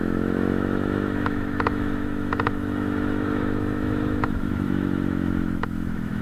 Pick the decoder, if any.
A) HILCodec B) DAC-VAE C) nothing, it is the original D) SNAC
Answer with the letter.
B